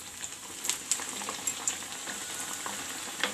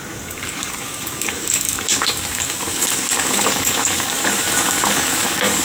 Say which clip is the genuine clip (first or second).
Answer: first